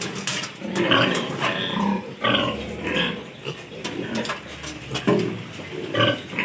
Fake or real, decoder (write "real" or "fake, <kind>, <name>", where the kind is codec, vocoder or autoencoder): real